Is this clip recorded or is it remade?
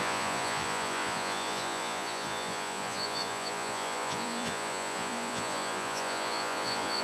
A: remade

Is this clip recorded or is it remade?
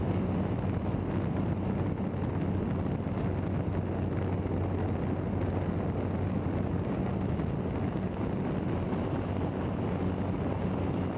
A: recorded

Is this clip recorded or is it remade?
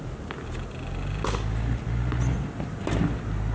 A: recorded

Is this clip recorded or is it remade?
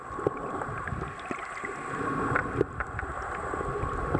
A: recorded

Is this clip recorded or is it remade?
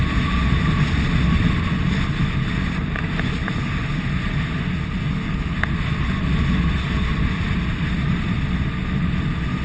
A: recorded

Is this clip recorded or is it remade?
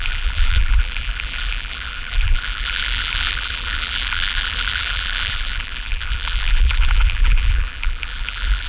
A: remade